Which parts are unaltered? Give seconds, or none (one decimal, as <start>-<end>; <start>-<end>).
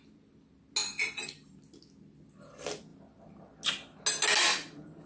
0.0-5.1